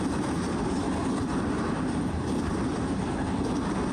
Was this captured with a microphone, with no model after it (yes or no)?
yes